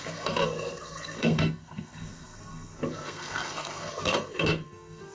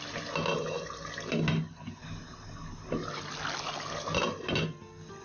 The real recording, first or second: second